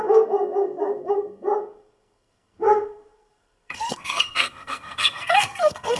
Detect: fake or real fake